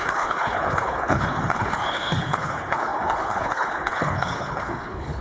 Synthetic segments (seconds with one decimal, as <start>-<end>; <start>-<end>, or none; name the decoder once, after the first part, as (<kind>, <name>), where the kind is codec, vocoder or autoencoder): 0.0-5.2 (codec, HILCodec)

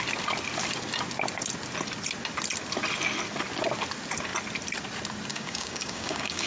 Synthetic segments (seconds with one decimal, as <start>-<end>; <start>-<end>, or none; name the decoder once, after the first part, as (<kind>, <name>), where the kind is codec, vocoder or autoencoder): 5.3-6.5 (codec, DAC)